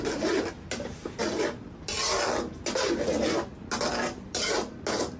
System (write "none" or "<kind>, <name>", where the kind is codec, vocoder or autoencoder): none